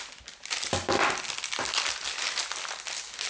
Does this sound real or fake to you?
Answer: real